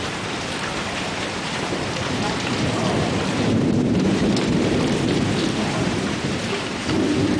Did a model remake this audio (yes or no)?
yes